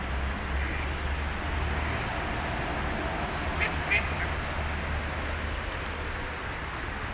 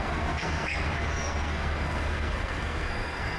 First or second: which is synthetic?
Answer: second